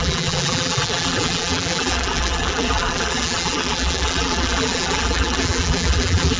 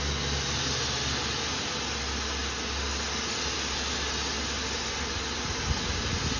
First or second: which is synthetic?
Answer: first